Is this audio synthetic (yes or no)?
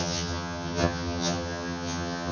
yes